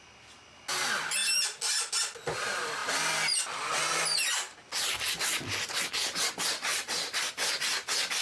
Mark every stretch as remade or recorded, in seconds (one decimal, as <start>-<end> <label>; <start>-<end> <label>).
0.0-8.2 recorded